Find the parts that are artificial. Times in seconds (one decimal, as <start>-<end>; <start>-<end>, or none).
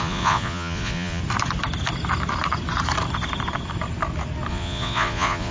0.0-1.2; 4.5-5.5